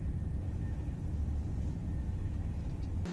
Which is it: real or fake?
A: real